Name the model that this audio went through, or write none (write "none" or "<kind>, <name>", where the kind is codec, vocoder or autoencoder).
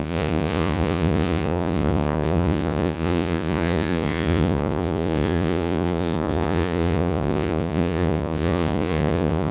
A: vocoder, Vocos